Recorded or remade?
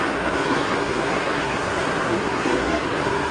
remade